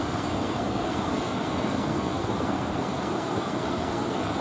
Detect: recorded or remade remade